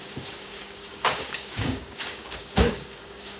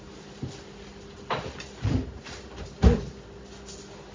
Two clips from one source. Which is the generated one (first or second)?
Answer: first